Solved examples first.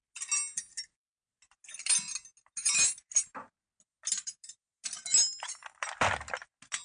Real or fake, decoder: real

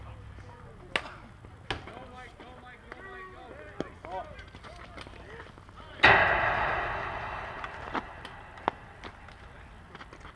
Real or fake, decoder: real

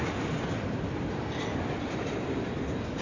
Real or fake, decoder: real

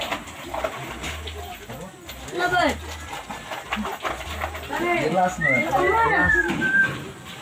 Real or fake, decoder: real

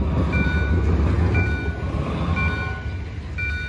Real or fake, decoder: real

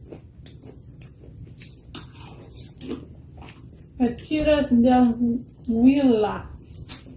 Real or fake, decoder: real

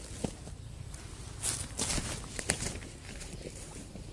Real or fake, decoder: real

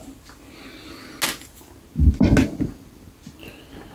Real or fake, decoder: real